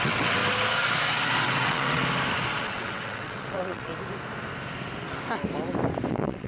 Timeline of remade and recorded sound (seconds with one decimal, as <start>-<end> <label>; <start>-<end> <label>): 0.0-0.4 remade; 0.4-1.4 recorded; 1.4-2.0 remade; 2.0-2.6 recorded; 2.6-3.9 remade; 3.9-6.1 recorded; 6.1-6.5 remade